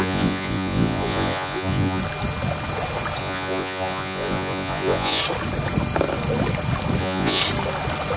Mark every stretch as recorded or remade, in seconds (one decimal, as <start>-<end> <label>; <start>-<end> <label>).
0.0-2.0 remade; 2.0-3.2 recorded; 3.2-5.2 remade; 5.2-7.0 recorded; 7.0-7.4 remade; 7.4-8.2 recorded